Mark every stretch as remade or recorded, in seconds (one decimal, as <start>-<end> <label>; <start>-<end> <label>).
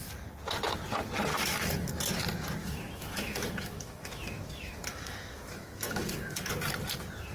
0.0-1.3 recorded; 1.3-1.9 remade; 1.9-2.6 recorded; 2.6-6.5 remade; 6.5-7.3 recorded